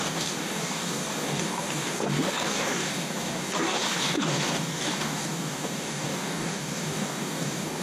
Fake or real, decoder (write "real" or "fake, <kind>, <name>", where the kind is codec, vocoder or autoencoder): fake, codec, DAC